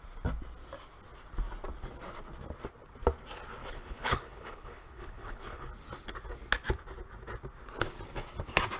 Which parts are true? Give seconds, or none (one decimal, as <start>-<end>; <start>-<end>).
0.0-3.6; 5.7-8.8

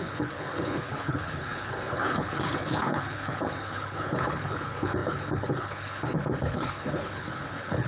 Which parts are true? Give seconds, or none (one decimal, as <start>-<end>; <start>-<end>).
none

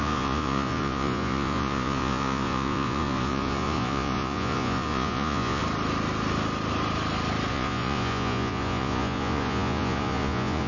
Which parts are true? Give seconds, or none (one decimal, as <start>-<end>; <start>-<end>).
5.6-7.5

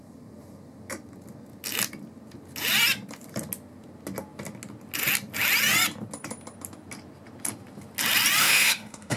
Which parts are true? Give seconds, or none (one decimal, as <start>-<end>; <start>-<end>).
0.0-8.4

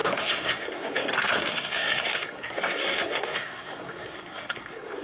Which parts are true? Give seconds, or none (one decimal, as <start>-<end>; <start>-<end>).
none